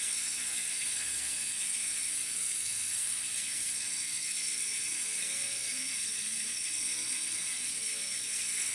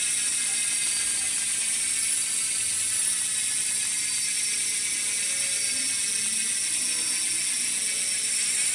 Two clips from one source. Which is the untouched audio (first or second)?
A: second